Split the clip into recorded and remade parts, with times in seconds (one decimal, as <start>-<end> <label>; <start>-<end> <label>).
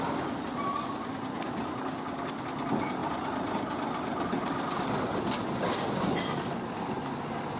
0.0-7.6 recorded